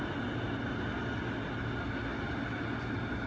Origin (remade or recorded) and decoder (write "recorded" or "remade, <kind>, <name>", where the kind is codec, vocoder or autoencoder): recorded